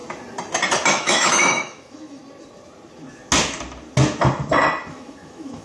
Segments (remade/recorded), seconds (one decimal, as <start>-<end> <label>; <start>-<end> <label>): 0.0-0.9 recorded; 0.9-2.2 remade; 2.2-4.9 recorded; 4.9-5.6 remade